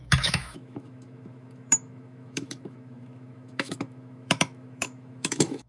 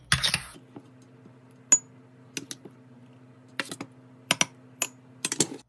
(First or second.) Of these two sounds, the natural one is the second